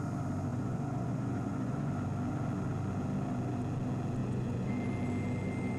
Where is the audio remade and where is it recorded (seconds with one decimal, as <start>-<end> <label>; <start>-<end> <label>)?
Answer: 0.0-0.5 recorded; 0.5-1.9 remade; 1.9-4.2 recorded; 4.2-4.7 remade; 4.7-5.8 recorded

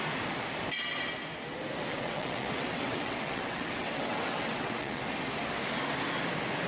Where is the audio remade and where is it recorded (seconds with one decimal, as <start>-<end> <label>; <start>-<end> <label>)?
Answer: 0.0-1.9 recorded; 1.9-5.0 remade; 5.0-6.7 recorded